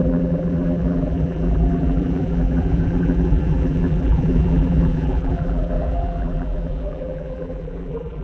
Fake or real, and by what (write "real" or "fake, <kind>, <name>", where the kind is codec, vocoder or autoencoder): fake, vocoder, BigVGAN v2